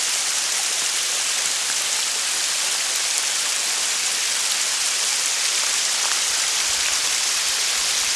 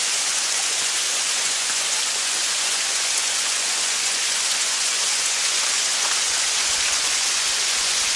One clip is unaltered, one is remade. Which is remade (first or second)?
second